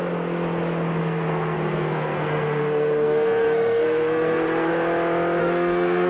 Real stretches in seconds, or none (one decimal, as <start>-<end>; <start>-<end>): 0.0-1.0; 4.7-5.4